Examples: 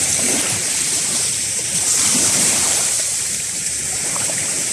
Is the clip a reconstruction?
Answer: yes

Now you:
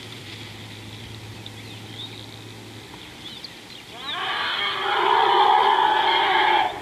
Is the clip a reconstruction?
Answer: no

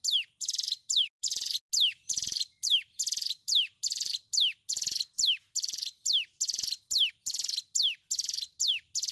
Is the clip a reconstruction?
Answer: no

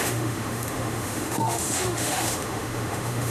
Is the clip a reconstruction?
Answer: yes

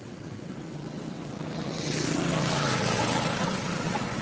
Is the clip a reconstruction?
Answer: yes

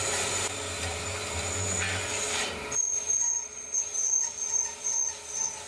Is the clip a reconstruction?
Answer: no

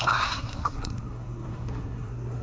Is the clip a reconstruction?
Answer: yes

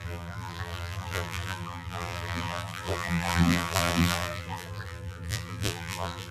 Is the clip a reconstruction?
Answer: yes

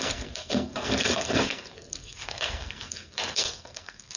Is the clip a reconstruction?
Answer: yes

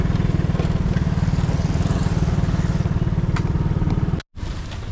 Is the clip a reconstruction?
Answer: no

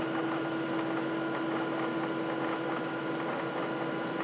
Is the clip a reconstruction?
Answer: no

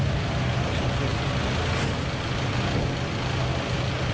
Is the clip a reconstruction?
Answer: no